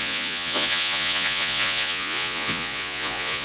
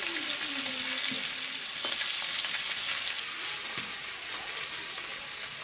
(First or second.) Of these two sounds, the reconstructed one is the first